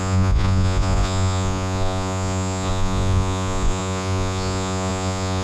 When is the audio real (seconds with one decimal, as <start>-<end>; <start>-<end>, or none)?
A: none